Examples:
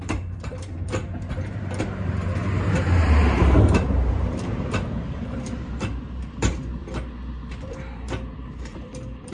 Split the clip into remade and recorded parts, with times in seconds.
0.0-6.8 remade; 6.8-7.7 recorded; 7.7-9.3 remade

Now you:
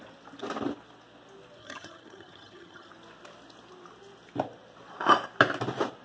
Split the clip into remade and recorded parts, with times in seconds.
0.0-1.6 recorded; 1.6-2.9 remade; 2.9-6.0 recorded

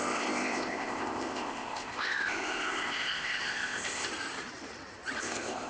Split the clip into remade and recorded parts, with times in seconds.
0.0-4.1 remade; 4.1-5.2 recorded; 5.2-5.7 remade

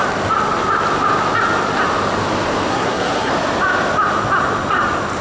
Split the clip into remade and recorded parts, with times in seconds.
0.0-2.7 recorded; 2.7-3.3 remade; 3.3-5.2 recorded

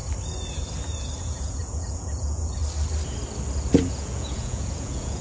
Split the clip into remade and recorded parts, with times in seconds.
0.0-1.2 recorded; 1.2-2.6 remade; 2.6-3.9 recorded; 3.9-5.2 remade

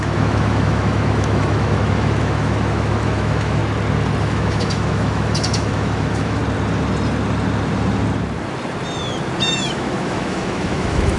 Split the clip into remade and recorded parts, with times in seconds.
0.0-3.6 remade; 3.6-4.2 recorded; 4.2-6.4 remade; 6.4-9.6 recorded; 9.6-11.2 remade